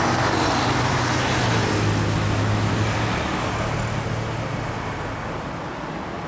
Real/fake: real